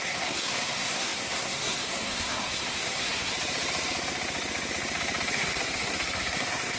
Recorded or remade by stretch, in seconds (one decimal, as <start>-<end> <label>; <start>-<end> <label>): 0.0-3.3 remade; 3.3-5.3 recorded; 5.3-6.8 remade